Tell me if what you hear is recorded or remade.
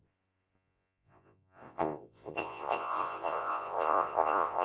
remade